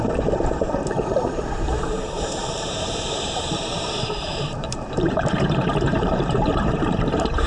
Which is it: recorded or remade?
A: remade